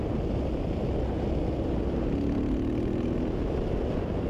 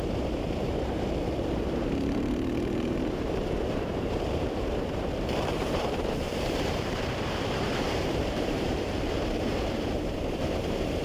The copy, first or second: second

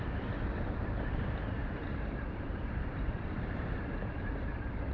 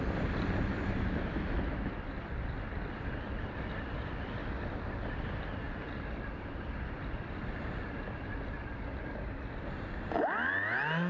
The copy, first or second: first